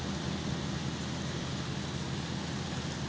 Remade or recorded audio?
recorded